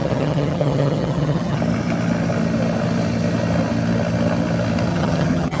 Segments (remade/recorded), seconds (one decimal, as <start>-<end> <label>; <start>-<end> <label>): 0.0-1.6 remade; 1.6-4.9 recorded; 4.9-5.6 remade